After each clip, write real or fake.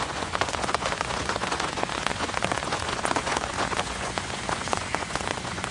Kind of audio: fake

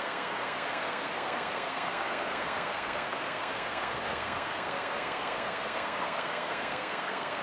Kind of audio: fake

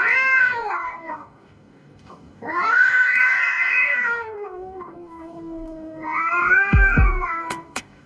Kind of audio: fake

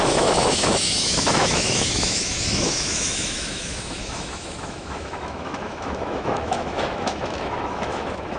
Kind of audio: fake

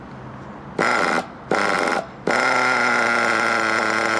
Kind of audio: real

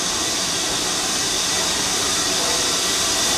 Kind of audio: real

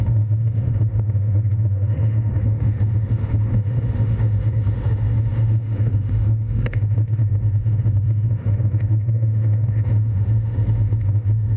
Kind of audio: fake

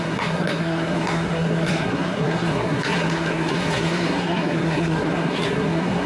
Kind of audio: fake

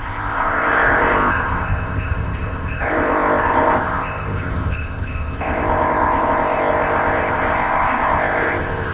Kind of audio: fake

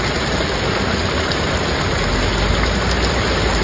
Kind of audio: real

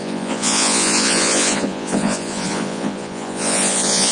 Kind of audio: fake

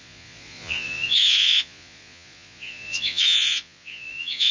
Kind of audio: fake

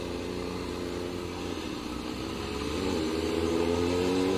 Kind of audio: real